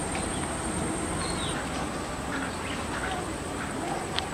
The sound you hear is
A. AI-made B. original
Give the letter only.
A